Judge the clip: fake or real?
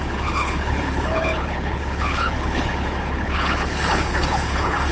fake